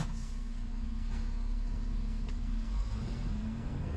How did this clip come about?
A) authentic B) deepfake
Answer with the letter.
B